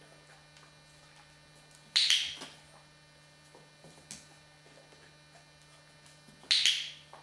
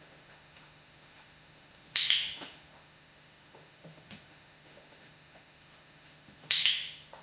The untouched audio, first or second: first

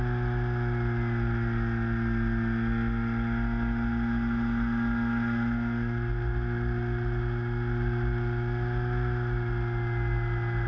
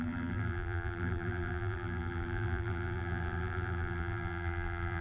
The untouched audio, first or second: first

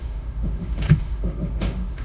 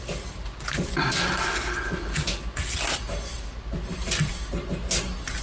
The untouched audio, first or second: second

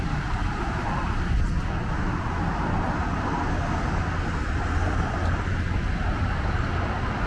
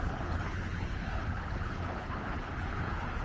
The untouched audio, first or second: first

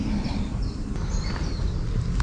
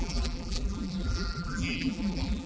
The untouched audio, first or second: first